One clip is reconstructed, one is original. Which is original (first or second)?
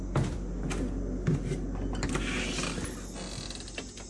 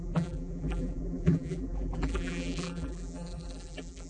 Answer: first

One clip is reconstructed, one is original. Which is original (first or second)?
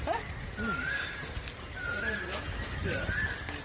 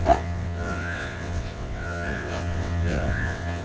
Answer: first